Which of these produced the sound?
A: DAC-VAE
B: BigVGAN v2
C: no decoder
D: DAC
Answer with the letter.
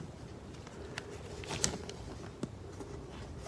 C